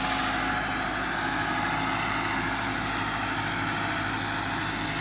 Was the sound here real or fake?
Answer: real